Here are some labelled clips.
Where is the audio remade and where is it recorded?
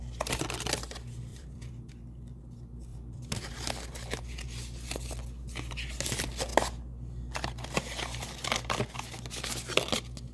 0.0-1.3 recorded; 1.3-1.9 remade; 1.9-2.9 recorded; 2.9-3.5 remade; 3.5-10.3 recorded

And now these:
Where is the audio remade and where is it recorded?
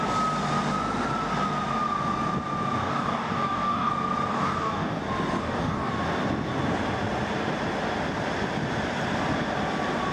0.0-2.8 recorded; 2.8-3.9 remade; 3.9-4.3 recorded; 4.3-5.0 remade; 5.0-5.4 recorded; 5.4-5.9 remade; 5.9-10.1 recorded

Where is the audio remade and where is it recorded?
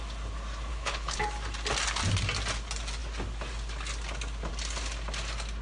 0.0-0.7 recorded; 0.7-1.2 remade; 1.2-5.6 recorded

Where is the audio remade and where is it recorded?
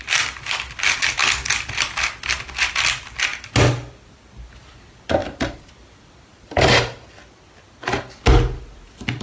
0.0-5.2 recorded; 5.2-5.7 remade; 5.7-6.3 recorded; 6.3-7.2 remade; 7.2-9.2 recorded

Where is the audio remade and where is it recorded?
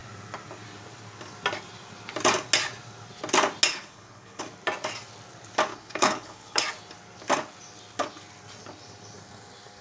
0.0-3.7 recorded; 3.7-4.4 remade; 4.4-5.7 recorded; 5.7-6.6 remade; 6.6-9.8 recorded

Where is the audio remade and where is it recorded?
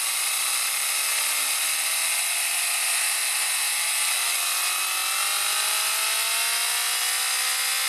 0.0-7.9 recorded